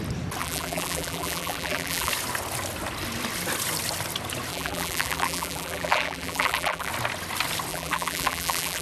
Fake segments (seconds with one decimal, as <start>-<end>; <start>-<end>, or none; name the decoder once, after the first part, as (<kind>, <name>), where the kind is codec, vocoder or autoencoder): 0.4-2.1 (vocoder, BigVGAN v2); 4.5-6.9; 7.7-8.8